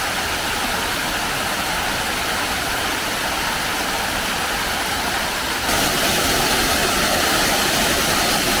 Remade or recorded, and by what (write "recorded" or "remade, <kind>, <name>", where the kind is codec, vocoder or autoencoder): recorded